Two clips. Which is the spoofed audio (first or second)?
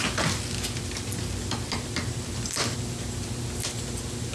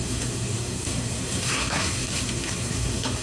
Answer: second